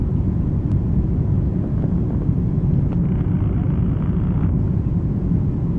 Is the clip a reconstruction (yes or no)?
no